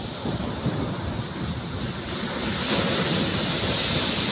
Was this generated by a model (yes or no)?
no